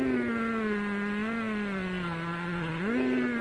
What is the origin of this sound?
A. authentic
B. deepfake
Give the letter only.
A